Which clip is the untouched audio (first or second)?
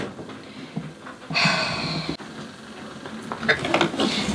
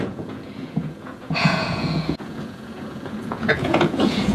first